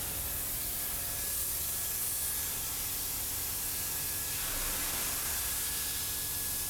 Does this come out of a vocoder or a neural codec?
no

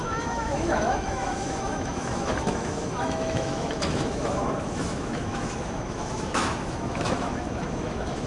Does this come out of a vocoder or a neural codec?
yes